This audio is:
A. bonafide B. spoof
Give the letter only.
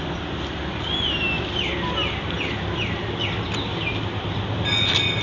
A